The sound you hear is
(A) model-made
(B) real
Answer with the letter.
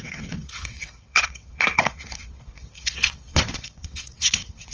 A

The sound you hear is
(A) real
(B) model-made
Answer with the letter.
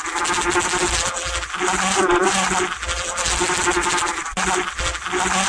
A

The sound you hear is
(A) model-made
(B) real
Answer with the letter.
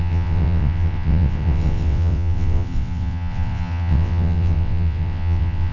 A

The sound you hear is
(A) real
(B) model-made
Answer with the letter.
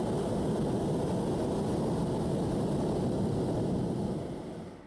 A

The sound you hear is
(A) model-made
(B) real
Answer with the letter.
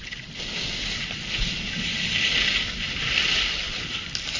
B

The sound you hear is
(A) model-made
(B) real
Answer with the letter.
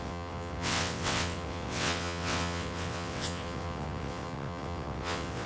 A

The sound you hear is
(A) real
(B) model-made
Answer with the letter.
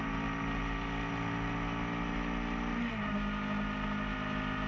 A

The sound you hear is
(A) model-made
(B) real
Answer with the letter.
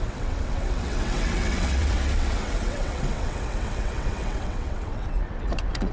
A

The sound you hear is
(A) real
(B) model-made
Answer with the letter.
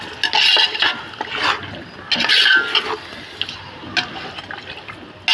A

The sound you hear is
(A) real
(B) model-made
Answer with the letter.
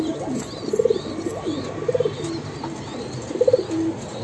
A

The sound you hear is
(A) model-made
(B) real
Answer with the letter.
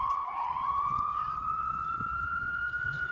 A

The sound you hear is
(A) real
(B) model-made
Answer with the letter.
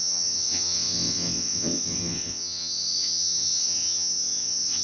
B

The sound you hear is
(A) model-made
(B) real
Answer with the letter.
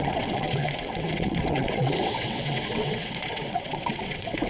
A